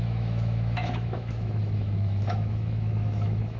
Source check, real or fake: fake